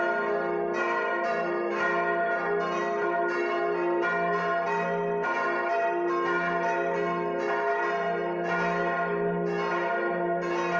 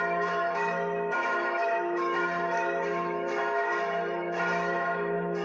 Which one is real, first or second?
first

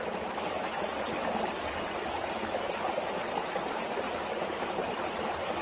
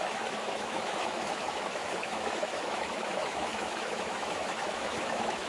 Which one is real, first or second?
first